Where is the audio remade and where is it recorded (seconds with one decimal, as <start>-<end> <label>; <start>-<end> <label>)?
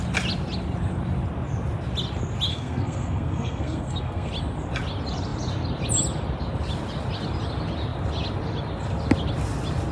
0.0-2.5 recorded; 2.5-4.3 remade; 4.3-9.9 recorded